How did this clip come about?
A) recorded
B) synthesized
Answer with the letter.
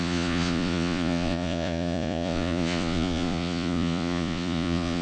B